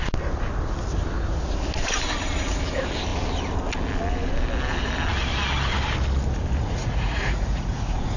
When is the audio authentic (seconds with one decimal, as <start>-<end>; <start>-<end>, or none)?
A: 0.0-6.6